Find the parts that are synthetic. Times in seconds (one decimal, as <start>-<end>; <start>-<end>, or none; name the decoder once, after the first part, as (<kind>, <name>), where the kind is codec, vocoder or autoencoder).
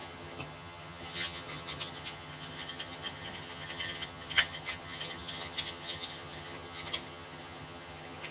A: 0.0-8.3 (vocoder, HiFi-GAN)